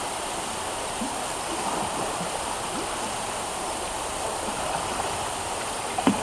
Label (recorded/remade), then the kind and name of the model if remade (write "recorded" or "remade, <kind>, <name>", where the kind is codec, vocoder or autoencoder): recorded